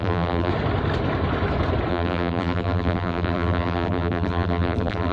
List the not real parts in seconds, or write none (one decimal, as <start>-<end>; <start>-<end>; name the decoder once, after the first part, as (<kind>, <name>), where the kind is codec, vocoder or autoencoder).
0.0-0.5 (vocoder, BigVGAN v2); 1.9-5.1